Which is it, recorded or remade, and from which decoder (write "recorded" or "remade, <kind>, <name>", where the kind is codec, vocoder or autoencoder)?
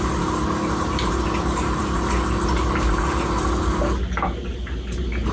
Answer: recorded